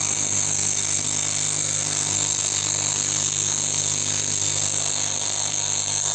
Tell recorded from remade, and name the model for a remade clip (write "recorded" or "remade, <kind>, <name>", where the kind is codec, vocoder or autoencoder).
remade, codec, SNAC